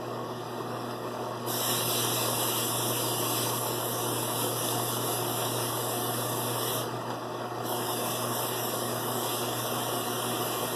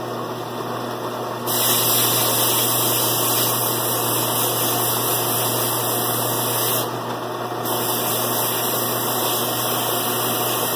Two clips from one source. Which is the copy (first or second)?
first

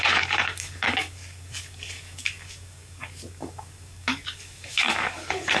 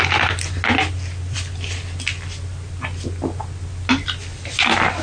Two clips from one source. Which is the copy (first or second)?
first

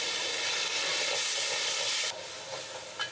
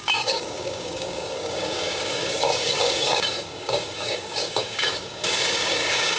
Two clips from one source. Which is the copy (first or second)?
second